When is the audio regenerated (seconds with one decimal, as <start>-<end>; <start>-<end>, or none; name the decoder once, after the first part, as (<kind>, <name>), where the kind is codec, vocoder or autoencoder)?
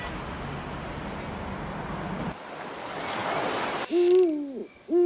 none